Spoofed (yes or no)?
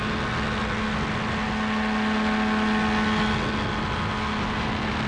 no